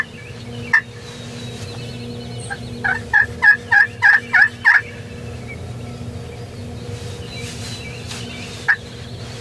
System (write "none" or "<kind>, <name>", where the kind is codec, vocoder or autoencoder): none